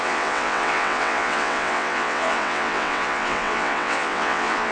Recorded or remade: remade